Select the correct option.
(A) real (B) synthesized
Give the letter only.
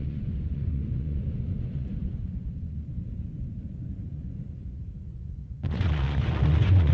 B